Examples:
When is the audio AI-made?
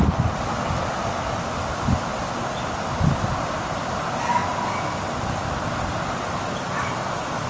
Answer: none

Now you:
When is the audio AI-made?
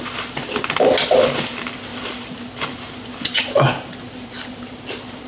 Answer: 1.9-5.3 (vocoder, BigVGAN v2)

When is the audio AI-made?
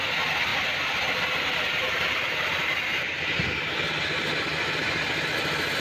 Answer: 0.5-3.9 (vocoder, BigVGAN v2)